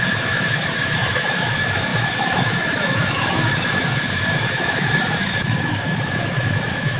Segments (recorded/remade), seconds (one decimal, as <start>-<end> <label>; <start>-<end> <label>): 0.0-7.0 remade